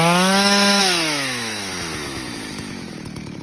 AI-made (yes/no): yes